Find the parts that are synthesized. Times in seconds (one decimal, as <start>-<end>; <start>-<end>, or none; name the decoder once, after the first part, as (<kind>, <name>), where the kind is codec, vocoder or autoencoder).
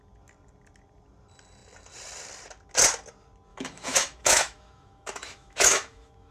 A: 3.5-6.3 (autoencoder, DAC-VAE)